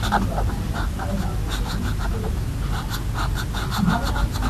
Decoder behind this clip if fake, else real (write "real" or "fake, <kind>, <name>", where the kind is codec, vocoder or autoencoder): real